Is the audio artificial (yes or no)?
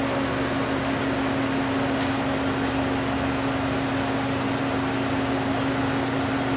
no